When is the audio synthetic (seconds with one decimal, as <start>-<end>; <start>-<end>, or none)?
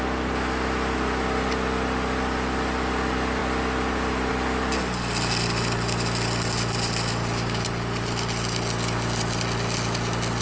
none